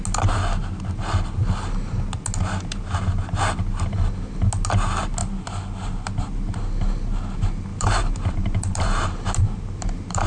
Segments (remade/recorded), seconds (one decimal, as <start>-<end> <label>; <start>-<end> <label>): 0.0-7.7 recorded; 7.7-10.3 remade